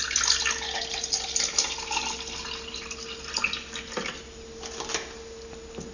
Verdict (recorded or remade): recorded